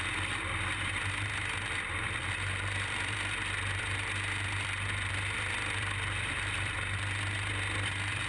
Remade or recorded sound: remade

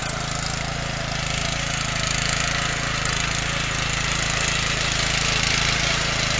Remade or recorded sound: recorded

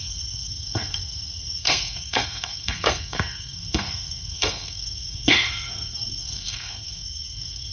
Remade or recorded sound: remade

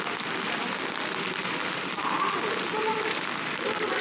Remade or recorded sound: recorded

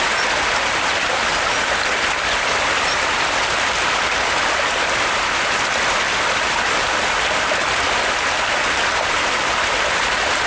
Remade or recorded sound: recorded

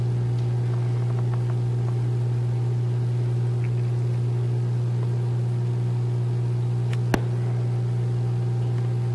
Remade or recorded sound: recorded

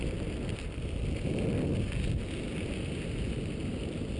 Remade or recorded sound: recorded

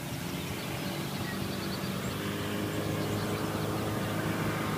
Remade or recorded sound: recorded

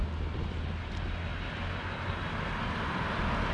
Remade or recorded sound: recorded